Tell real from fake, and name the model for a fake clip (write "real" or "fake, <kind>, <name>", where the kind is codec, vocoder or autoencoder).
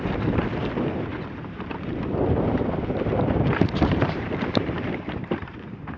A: fake, vocoder, BigVGAN v2